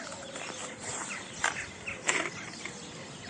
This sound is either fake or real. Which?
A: real